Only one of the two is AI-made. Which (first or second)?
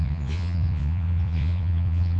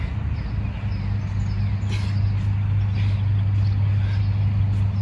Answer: first